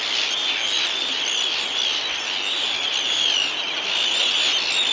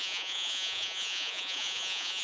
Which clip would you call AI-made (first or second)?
second